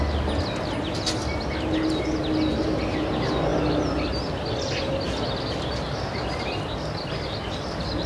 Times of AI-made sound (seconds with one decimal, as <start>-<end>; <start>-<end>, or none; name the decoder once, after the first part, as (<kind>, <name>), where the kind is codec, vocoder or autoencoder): none